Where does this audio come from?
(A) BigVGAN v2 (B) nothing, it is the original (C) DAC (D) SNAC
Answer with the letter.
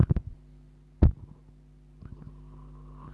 B